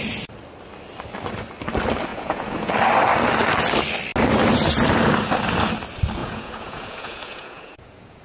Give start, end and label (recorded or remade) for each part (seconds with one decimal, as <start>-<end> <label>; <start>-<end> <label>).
0.0-2.1 recorded; 2.1-2.7 remade; 2.7-6.2 recorded; 6.2-8.2 remade